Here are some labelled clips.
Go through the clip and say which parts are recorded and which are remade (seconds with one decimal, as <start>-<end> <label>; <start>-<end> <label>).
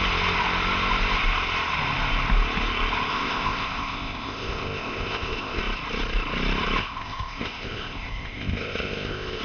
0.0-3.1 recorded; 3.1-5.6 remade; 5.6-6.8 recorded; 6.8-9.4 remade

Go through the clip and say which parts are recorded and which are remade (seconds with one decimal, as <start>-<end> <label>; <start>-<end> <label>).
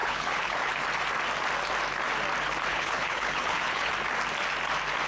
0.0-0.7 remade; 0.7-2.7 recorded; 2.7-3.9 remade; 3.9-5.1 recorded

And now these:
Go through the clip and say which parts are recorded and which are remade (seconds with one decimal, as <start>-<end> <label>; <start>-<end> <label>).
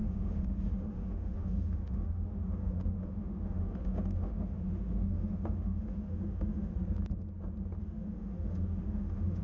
0.0-6.7 remade; 6.7-7.8 recorded; 7.8-9.4 remade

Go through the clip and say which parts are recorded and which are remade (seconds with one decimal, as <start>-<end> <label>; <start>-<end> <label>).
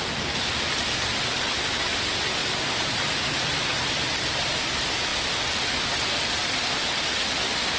0.0-7.8 recorded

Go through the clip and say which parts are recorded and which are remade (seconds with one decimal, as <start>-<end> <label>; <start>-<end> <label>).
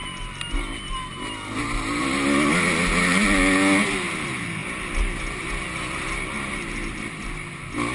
0.0-7.9 recorded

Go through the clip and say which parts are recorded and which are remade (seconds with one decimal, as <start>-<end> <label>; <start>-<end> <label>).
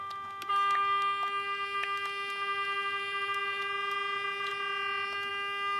0.0-5.8 recorded